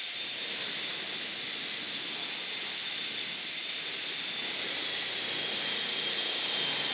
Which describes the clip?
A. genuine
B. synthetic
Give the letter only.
A